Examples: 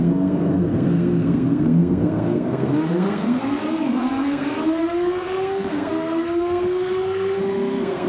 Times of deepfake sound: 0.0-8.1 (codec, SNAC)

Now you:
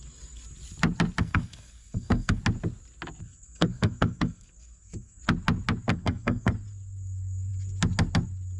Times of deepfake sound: 1.2-2.4 (codec, SNAC); 3.2-5.2; 5.9-6.5

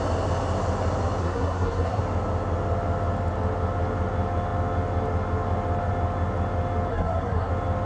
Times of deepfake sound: 1.2-2.0 (codec, SNAC); 6.9-7.5

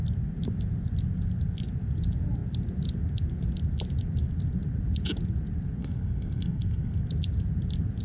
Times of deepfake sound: 5.8-7.0 (codec, SNAC)